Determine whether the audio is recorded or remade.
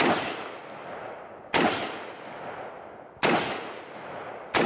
recorded